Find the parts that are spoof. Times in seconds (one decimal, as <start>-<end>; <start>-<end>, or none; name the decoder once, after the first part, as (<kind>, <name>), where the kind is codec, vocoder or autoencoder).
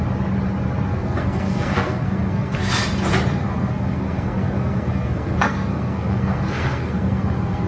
0.9-2.8 (codec, SNAC); 3.4-7.7